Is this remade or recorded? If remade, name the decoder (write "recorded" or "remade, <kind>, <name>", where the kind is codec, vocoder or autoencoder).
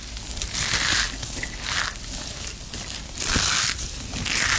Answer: recorded